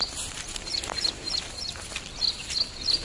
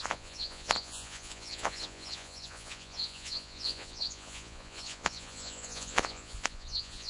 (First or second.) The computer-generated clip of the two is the second